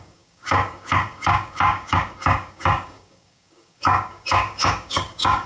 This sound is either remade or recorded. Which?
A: remade